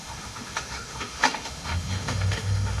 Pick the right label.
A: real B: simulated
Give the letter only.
B